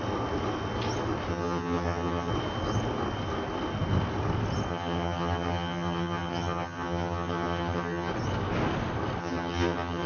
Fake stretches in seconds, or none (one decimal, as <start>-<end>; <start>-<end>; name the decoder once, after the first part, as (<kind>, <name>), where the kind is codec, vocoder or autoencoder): 1.3-2.3 (vocoder, HiFi-GAN); 4.7-8.1; 9.2-10.1